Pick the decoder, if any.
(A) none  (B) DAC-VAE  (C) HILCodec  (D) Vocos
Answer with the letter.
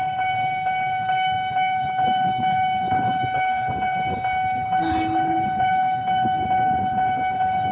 C